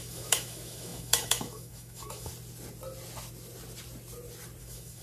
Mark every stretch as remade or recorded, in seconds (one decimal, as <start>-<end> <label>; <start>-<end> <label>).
0.0-2.3 remade; 2.3-4.6 recorded; 4.6-5.0 remade